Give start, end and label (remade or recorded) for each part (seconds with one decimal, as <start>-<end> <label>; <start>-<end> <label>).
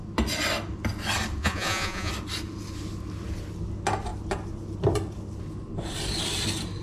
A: 0.0-1.4 recorded; 1.4-2.1 remade; 2.1-6.8 recorded